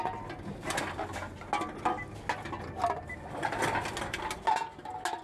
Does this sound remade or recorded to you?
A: recorded